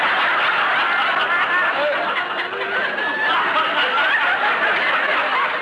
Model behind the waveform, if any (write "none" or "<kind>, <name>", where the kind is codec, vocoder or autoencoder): none